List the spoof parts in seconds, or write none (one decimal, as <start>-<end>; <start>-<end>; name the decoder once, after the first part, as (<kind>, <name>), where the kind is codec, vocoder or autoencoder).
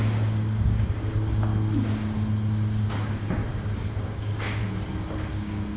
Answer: 0.0-1.5 (codec, DAC); 2.8-3.4; 4.0-4.6; 5.3-5.8